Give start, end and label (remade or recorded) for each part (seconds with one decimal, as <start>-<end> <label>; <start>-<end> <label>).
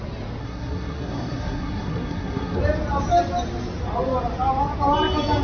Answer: 0.0-0.4 recorded; 0.4-2.6 remade; 2.6-5.4 recorded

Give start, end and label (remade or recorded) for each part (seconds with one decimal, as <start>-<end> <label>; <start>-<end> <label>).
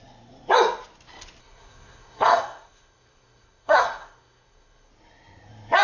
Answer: 0.0-1.4 recorded; 1.4-4.9 remade; 4.9-5.8 recorded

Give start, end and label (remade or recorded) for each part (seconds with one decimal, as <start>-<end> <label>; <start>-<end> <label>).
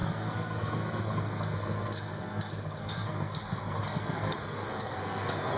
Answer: 0.0-5.6 remade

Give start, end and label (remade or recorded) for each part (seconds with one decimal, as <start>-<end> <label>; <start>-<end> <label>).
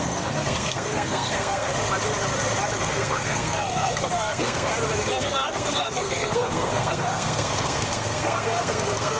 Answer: 0.0-1.7 remade; 1.7-2.8 recorded; 2.8-4.7 remade; 4.7-5.2 recorded; 5.2-9.2 remade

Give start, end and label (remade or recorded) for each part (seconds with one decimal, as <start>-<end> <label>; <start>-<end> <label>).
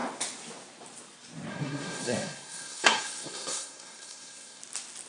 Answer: 0.0-1.5 recorded; 1.5-4.6 remade; 4.6-5.1 recorded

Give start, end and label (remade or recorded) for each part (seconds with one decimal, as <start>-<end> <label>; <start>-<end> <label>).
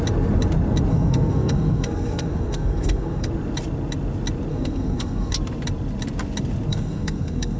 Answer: 0.0-0.9 recorded; 0.9-3.3 remade; 3.3-4.5 recorded; 4.5-5.3 remade; 5.3-6.7 recorded; 6.7-7.6 remade